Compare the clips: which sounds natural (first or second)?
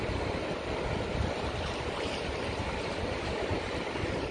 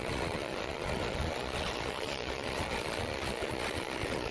first